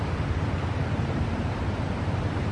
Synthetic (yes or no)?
no